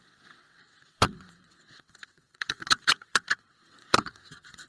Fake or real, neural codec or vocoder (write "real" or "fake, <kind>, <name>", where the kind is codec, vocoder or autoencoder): fake, vocoder, WaveNeXt